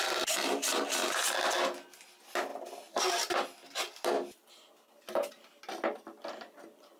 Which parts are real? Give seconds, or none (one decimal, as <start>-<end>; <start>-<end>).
0.0-7.0